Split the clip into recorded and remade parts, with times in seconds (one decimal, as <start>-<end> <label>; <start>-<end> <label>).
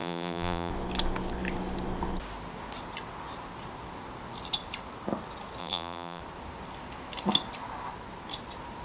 0.0-0.7 remade; 0.7-5.6 recorded; 5.6-6.2 remade; 6.2-8.8 recorded